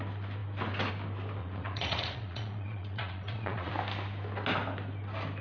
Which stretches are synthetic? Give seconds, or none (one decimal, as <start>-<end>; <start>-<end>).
1.4-3.7